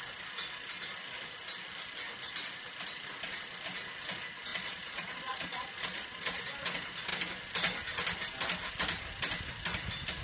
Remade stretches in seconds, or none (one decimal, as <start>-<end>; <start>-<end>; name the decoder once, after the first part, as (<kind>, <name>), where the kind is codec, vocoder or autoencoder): 4.5-6.4 (vocoder, Vocos)